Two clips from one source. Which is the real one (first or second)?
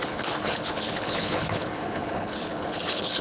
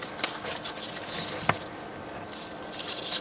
second